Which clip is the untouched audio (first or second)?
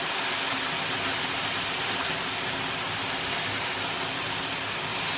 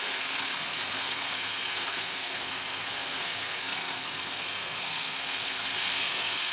first